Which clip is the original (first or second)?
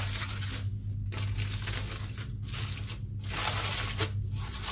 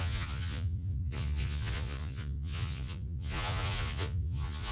first